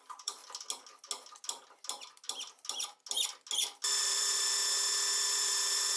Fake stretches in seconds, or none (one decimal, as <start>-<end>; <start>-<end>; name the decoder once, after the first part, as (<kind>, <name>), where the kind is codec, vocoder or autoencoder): 0.0-0.4 (vocoder, BigVGAN v2); 4.0-4.6; 5.3-6.0